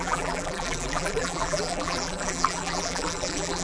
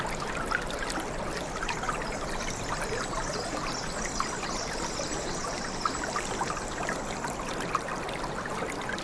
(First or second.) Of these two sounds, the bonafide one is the second